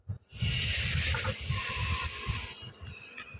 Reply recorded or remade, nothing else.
recorded